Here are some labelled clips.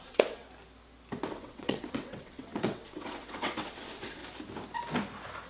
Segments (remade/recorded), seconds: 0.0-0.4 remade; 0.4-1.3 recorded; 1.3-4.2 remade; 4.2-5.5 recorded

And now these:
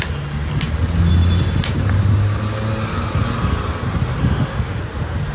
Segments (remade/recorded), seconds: 0.0-4.2 recorded; 4.2-4.8 remade; 4.8-5.3 recorded

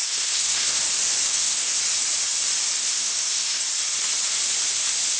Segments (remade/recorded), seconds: 0.0-0.8 remade; 0.8-1.3 recorded; 1.3-1.8 remade; 1.8-2.8 recorded; 2.8-3.6 remade; 3.6-5.2 recorded